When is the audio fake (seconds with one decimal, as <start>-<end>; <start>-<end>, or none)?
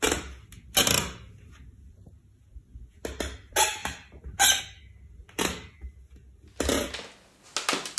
none